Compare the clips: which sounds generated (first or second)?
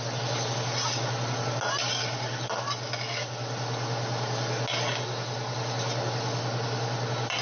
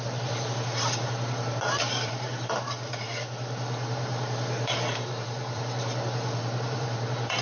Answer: second